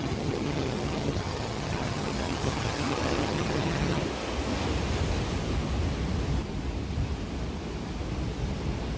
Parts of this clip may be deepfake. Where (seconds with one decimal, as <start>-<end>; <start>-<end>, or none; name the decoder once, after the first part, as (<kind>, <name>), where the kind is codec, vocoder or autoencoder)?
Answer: 0.0-4.0 (vocoder, HiFi-GAN)